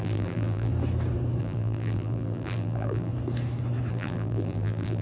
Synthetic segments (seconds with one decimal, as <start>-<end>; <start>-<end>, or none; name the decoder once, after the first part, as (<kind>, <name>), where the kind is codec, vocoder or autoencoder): 0.0-0.7 (vocoder, BigVGAN v2); 1.4-3.1; 3.9-5.0